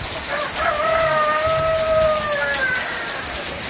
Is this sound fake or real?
real